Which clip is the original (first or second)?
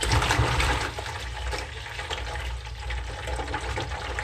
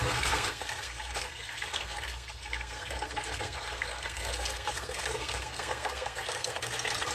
first